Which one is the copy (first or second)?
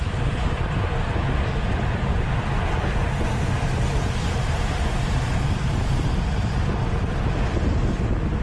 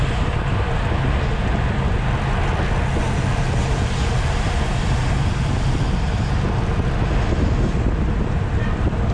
first